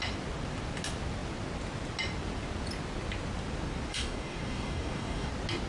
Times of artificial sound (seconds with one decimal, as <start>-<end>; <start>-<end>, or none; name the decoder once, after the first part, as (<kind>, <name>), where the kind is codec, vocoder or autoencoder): 3.9-5.3 (codec, DAC)